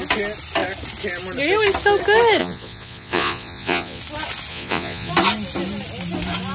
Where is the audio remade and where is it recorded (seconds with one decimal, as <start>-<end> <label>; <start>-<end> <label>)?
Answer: 0.0-2.4 recorded; 2.4-4.0 remade; 4.0-4.5 recorded; 4.5-5.1 remade; 5.1-6.5 recorded